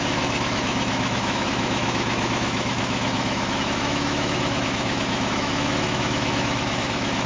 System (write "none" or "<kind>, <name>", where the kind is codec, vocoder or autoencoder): autoencoder, DAC-VAE